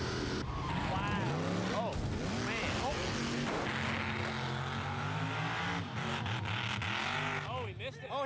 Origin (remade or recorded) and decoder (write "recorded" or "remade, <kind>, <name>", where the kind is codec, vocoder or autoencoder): recorded